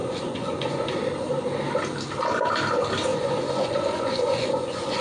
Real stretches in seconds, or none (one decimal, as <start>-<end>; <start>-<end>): 0.9-3.1